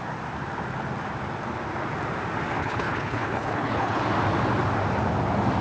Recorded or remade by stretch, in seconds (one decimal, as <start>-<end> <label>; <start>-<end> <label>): 0.0-2.6 recorded; 2.6-4.0 remade; 4.0-5.6 recorded